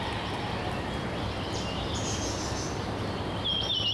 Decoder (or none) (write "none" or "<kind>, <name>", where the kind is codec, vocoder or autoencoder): none